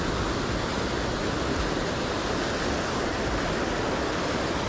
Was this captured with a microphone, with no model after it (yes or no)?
yes